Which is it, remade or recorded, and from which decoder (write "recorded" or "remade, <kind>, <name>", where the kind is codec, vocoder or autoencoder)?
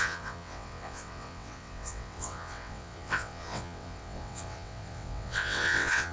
remade, vocoder, WaveNeXt